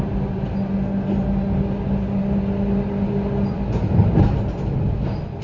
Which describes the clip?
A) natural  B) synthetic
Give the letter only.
A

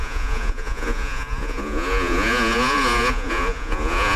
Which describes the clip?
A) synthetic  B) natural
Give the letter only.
A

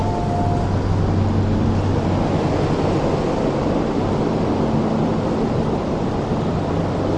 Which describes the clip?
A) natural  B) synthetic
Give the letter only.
A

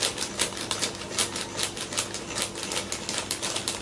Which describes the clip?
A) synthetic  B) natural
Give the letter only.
B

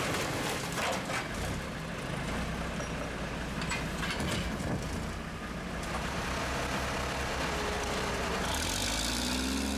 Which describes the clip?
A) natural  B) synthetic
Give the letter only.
A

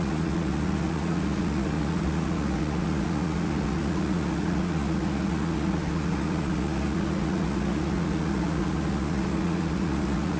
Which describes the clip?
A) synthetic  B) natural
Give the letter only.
A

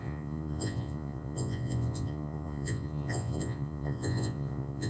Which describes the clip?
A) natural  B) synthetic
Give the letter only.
B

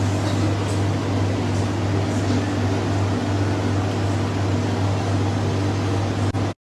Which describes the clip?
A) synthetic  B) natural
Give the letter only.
B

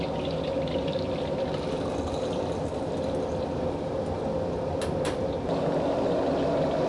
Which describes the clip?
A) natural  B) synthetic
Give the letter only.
A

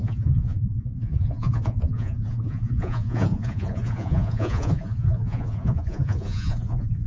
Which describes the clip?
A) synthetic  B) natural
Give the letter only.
A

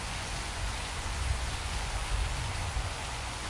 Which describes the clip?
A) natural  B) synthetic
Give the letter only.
B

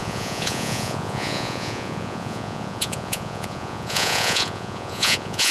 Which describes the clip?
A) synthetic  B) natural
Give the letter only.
A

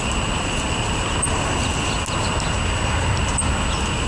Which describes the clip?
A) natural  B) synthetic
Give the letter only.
A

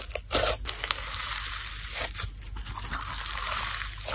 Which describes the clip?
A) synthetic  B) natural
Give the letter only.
B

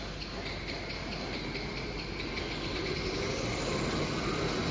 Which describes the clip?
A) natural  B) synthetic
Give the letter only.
A